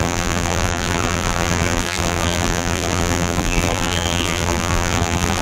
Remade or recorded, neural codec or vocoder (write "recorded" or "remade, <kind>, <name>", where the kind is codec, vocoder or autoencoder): remade, vocoder, BigVGAN v2